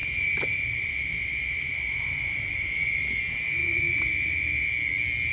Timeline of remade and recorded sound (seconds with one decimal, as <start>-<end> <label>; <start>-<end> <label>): 0.0-3.2 remade; 3.2-3.6 recorded; 3.6-4.7 remade; 4.7-5.3 recorded